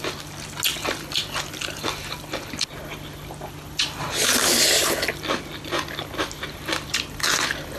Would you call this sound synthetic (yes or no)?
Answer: no